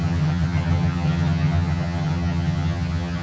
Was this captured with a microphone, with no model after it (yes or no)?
no